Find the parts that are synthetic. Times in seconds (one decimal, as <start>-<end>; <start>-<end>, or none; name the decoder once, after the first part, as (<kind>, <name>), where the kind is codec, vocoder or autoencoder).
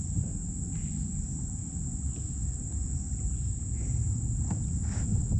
none